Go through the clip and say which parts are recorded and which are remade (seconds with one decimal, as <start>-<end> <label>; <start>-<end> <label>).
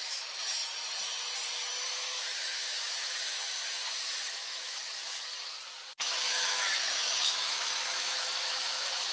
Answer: 0.0-0.6 remade; 0.6-1.9 recorded; 1.9-5.0 remade; 5.0-6.1 recorded; 6.1-9.1 remade